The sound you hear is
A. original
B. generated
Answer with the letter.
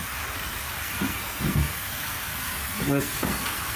B